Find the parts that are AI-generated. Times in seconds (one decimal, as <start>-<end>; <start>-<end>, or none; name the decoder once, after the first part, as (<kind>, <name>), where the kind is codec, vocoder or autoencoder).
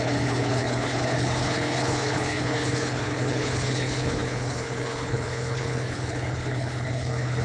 0.0-7.4 (codec, HILCodec)